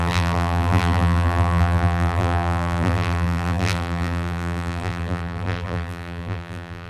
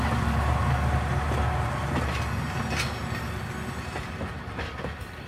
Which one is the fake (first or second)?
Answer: first